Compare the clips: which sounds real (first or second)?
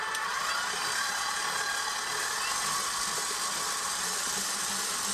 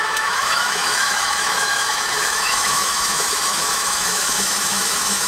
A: first